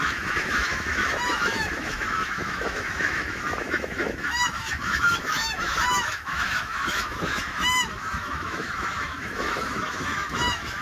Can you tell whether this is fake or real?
fake